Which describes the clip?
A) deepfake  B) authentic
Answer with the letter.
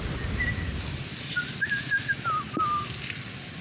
B